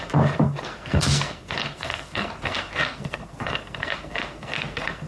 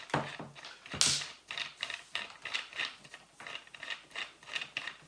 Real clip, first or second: second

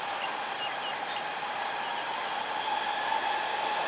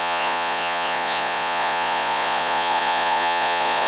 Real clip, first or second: first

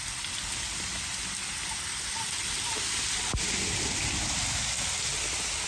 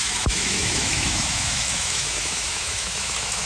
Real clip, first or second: first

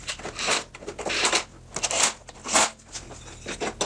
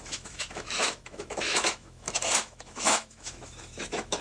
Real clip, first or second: first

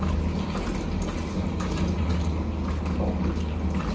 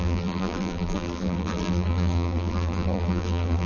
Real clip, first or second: first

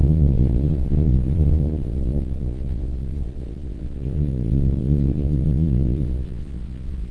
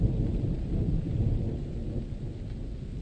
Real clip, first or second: second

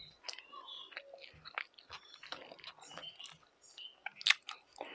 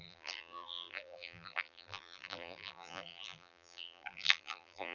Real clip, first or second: first